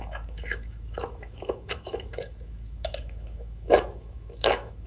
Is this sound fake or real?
fake